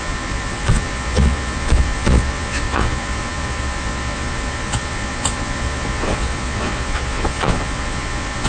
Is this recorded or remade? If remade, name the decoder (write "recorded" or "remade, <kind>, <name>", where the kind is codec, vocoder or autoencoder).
remade, vocoder, Vocos